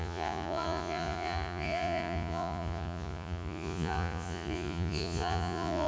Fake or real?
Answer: fake